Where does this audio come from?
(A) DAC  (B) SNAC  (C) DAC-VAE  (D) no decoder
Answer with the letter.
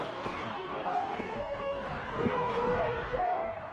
A